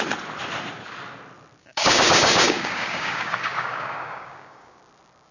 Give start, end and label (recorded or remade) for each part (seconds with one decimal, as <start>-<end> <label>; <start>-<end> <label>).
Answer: 0.0-1.6 recorded; 1.6-4.8 remade; 4.8-5.3 recorded